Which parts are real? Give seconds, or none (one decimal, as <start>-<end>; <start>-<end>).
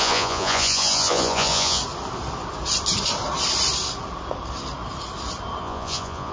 1.8-5.6